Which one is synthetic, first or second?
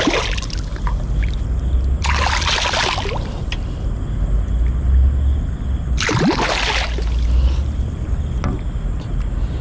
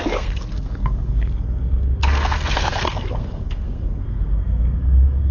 second